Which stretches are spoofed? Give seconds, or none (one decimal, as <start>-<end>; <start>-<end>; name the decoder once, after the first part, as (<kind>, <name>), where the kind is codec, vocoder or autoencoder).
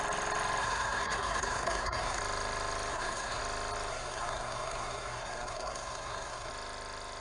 0.6-2.2 (codec, SNAC); 2.9-3.4; 3.9-6.5